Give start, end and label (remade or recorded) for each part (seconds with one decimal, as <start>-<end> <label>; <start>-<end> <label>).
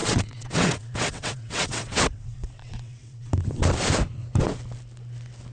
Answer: 0.0-3.3 remade; 3.3-5.5 recorded